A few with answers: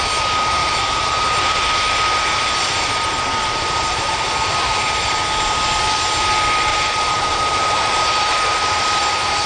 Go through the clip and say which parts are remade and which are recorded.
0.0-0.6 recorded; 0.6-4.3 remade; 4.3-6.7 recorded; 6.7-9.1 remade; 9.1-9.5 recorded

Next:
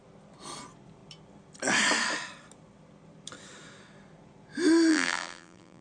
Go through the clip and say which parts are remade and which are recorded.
0.0-4.9 recorded; 4.9-5.8 remade

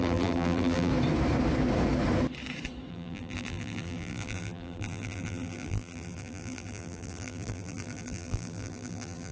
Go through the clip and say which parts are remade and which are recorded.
0.0-0.9 remade; 0.9-2.9 recorded; 2.9-9.3 remade

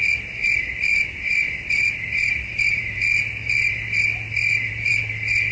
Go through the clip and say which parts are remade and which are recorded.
0.0-0.4 recorded; 0.4-3.7 remade; 3.7-4.5 recorded; 4.5-5.0 remade; 5.0-5.5 recorded

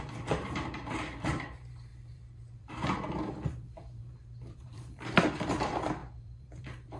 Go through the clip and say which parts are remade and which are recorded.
0.0-7.0 remade

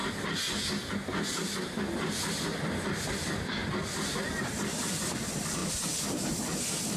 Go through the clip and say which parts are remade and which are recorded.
0.0-2.6 recorded; 2.6-3.6 remade; 3.6-4.3 recorded; 4.3-7.0 remade

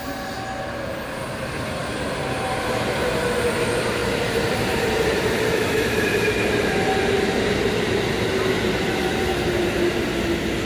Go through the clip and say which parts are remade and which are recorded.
0.0-1.8 recorded; 1.8-2.5 remade; 2.5-4.0 recorded; 4.0-7.6 remade; 7.6-10.7 recorded